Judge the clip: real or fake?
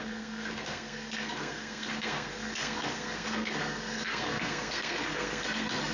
fake